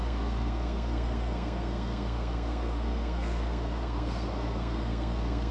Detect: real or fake fake